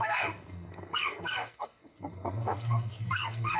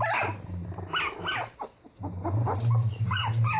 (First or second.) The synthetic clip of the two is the first